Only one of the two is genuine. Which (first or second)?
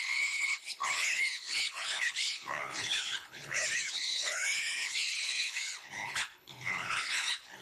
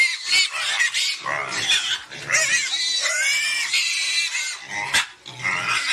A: second